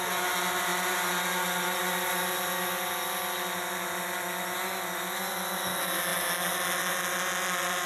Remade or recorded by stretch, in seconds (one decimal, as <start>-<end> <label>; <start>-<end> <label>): 0.0-7.9 recorded